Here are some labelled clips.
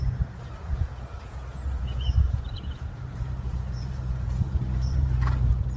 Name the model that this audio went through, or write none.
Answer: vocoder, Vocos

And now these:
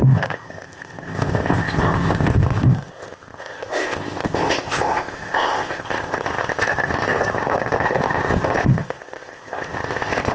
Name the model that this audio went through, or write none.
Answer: codec, ZipCodec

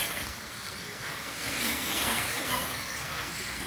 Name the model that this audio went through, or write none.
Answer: codec, SNAC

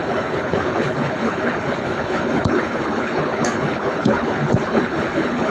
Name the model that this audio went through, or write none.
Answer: codec, HILCodec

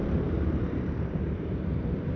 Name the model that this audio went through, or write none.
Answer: vocoder, BigVGAN v2